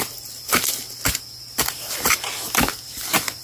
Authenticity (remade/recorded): recorded